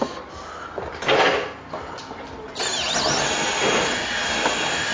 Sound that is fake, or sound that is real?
real